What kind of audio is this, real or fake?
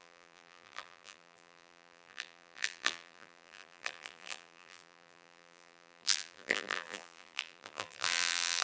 fake